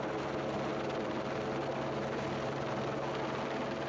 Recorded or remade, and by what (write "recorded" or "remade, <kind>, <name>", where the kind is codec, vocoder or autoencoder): recorded